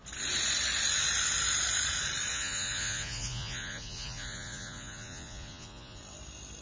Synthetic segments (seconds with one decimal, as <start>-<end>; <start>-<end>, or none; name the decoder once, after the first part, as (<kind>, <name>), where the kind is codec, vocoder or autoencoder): 2.3-6.0 (vocoder, Vocos)